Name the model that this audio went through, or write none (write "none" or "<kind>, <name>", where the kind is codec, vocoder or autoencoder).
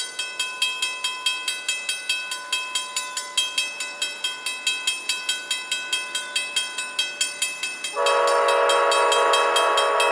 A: none